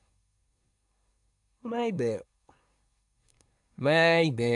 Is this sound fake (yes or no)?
yes